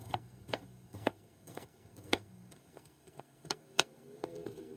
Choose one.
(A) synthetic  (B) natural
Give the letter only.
A